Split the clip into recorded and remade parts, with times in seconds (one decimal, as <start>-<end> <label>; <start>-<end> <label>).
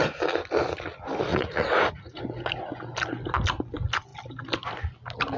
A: 0.0-1.3 recorded; 1.3-2.2 remade; 2.2-5.4 recorded